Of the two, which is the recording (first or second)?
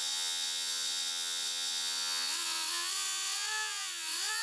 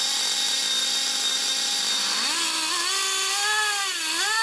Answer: second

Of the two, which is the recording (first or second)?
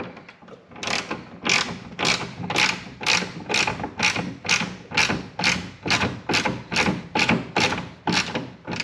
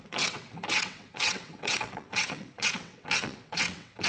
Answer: first